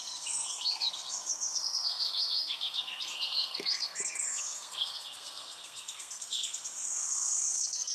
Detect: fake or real fake